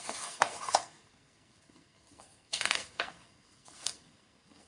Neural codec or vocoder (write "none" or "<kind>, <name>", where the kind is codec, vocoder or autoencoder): codec, SNAC